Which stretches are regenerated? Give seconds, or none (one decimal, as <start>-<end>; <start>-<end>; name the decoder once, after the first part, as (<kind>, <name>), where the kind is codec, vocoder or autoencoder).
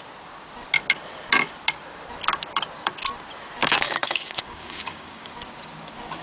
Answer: 3.6-5.3 (codec, DAC)